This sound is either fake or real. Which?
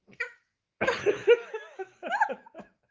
fake